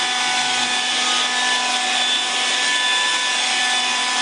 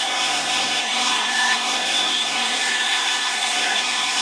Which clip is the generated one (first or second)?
second